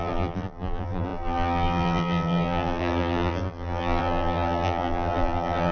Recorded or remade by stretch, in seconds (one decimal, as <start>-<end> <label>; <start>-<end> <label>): 0.0-5.7 remade

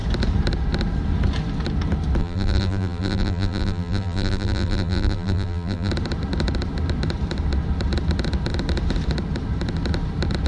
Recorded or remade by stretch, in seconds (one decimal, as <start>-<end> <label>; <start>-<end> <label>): 0.0-2.2 recorded; 2.2-5.9 remade; 5.9-10.5 recorded

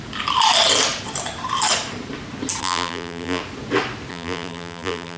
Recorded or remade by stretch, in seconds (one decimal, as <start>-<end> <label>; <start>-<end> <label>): 0.0-2.6 recorded; 2.6-3.4 remade; 3.4-4.1 recorded; 4.1-5.2 remade

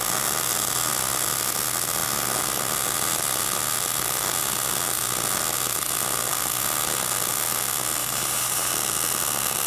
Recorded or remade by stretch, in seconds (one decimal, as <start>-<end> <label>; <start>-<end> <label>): 0.0-8.0 recorded; 8.0-8.7 remade; 8.7-9.7 recorded

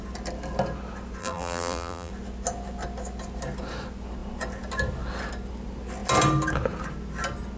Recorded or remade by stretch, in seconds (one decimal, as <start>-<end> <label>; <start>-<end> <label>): 0.0-1.2 recorded; 1.2-2.1 remade; 2.1-7.6 recorded